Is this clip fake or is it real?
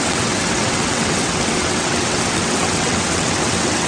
fake